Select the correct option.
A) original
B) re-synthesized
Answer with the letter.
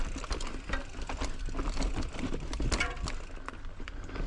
A